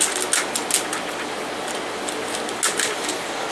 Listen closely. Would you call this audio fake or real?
real